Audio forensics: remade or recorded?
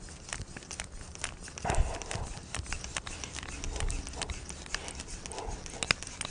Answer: recorded